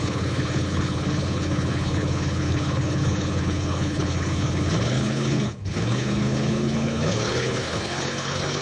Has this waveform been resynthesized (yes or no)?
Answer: yes